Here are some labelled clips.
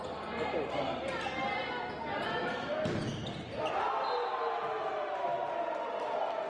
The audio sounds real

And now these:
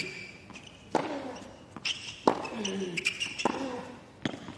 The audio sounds real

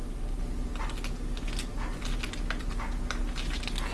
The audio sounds real